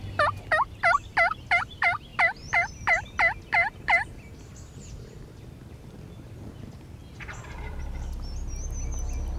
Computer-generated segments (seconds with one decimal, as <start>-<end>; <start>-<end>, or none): 2.1-3.0; 7.0-7.8